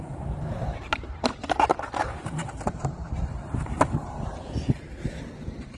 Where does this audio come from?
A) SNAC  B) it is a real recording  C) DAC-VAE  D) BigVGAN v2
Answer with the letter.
D